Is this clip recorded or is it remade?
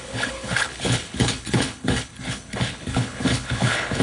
remade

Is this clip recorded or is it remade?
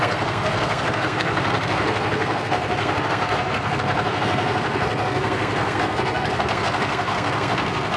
remade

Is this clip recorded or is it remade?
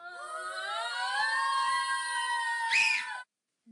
recorded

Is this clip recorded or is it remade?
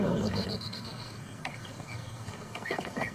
remade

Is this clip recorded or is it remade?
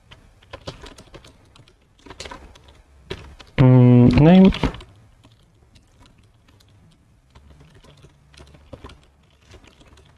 recorded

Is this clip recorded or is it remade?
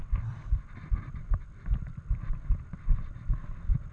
remade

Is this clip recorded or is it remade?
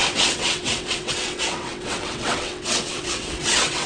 remade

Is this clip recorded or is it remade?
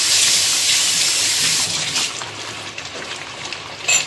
remade